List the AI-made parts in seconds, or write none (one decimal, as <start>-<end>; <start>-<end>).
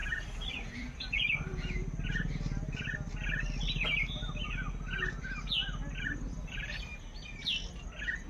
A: 0.5-1.5; 6.0-6.9